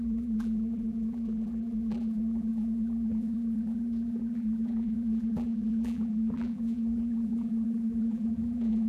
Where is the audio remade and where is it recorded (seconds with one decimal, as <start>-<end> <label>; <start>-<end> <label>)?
0.0-8.9 remade